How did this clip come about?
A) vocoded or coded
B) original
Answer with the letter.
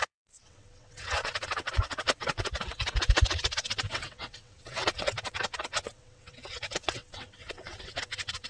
A